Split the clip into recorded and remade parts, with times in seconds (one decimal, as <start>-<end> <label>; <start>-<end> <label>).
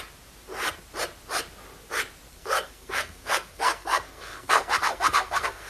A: 0.0-2.3 recorded; 2.3-5.7 remade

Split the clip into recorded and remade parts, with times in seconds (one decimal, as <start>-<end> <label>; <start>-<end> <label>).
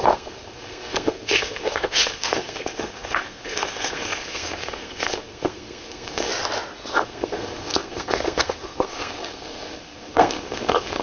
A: 0.0-6.3 remade; 6.3-6.9 recorded; 6.9-11.0 remade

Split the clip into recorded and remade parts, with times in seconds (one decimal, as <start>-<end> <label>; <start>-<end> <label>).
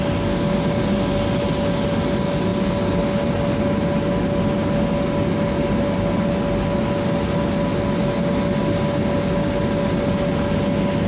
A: 0.0-11.1 recorded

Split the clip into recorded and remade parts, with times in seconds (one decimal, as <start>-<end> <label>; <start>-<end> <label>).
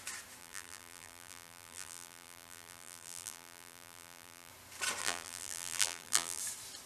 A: 0.0-0.4 recorded; 0.4-4.5 remade; 4.5-5.0 recorded; 5.0-6.4 remade; 6.4-6.9 recorded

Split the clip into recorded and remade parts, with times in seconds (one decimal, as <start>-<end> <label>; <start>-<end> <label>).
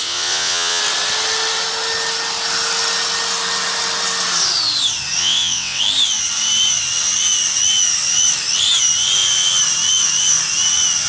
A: 0.0-0.8 remade; 0.8-5.2 recorded; 5.2-5.8 remade; 5.8-11.1 recorded